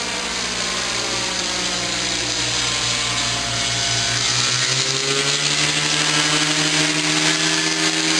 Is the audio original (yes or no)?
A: yes